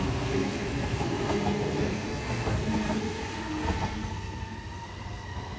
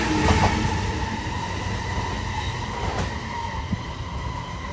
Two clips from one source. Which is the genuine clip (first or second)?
second